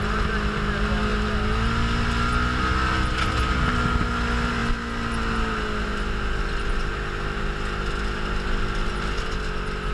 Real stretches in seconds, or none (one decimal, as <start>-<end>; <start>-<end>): 0.0-9.9